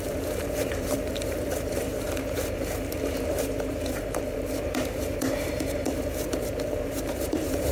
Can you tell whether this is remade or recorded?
remade